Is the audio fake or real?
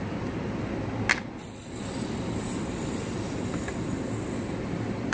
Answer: real